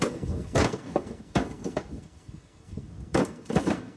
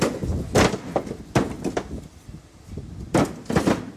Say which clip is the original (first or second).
second